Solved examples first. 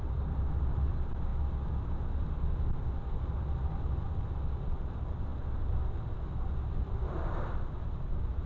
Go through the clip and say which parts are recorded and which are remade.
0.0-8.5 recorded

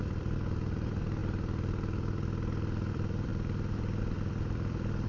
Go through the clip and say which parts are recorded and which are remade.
0.0-1.2 remade; 1.2-2.9 recorded; 2.9-3.3 remade; 3.3-4.0 recorded; 4.0-5.1 remade

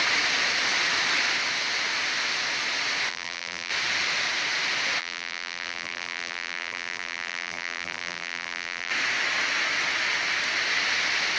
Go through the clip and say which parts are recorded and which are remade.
0.0-3.1 recorded; 3.1-3.7 remade; 3.7-5.0 recorded; 5.0-8.9 remade; 8.9-11.4 recorded

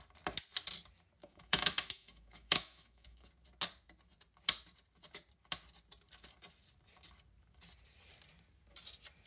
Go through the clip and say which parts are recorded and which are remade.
0.0-1.2 recorded; 1.2-3.3 remade; 3.3-9.3 recorded

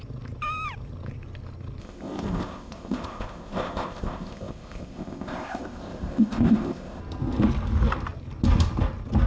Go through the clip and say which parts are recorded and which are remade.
0.0-1.8 recorded; 1.8-7.0 remade; 7.0-9.3 recorded

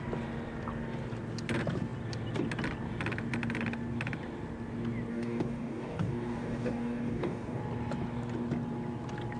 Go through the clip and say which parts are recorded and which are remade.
0.0-5.1 recorded; 5.1-7.6 remade; 7.6-9.4 recorded